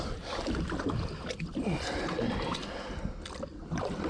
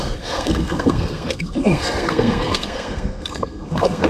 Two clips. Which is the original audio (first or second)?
first